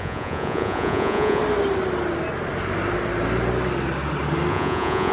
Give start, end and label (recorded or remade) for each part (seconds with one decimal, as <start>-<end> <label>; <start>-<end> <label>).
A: 0.0-1.4 remade; 1.4-4.5 recorded; 4.5-5.1 remade